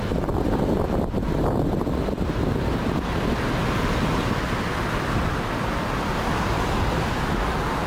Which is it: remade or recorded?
recorded